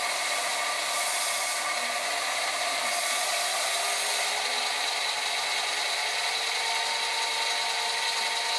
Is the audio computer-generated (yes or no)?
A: no